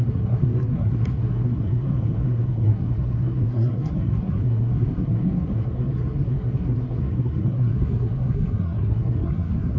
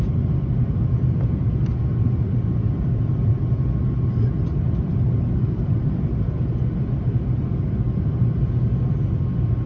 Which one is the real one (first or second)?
second